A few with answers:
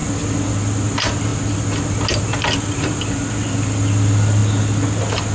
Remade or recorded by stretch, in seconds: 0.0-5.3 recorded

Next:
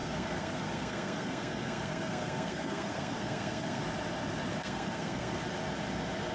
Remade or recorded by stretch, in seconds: 0.0-3.8 remade; 3.8-4.5 recorded; 4.5-5.4 remade; 5.4-6.3 recorded